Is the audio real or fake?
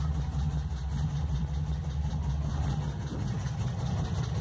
real